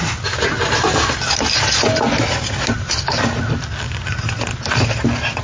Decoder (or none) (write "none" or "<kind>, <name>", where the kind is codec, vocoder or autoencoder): none